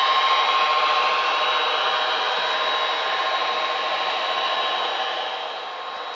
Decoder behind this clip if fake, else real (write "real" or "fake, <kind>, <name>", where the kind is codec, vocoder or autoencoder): real